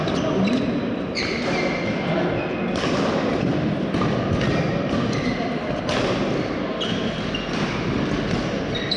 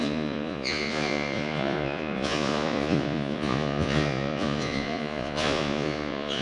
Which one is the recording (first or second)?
first